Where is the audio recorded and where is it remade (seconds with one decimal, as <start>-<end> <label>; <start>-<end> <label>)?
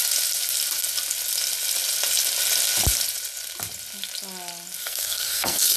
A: 0.0-4.8 recorded; 4.8-5.8 remade